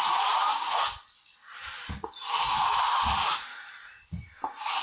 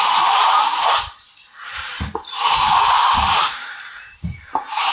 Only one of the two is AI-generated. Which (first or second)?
second